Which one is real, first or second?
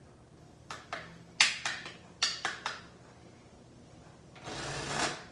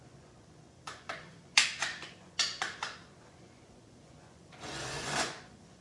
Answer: first